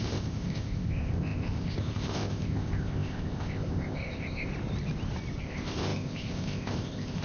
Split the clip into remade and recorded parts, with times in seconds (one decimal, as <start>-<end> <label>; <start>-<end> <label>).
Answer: 0.0-4.5 remade; 4.5-5.4 recorded; 5.4-7.2 remade